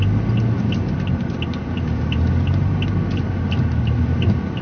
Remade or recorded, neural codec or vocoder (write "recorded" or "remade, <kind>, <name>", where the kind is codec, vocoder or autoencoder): recorded